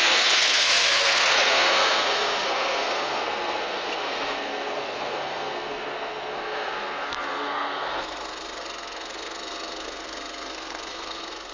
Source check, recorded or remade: remade